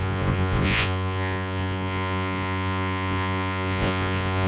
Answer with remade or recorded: remade